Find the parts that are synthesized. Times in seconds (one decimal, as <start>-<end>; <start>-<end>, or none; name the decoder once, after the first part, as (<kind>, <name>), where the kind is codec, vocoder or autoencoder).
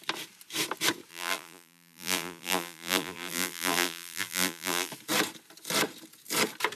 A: 1.1-4.9 (vocoder, BigVGAN v2)